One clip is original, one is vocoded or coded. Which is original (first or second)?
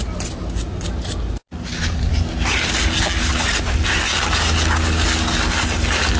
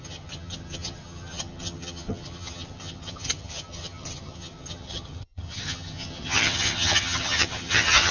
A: first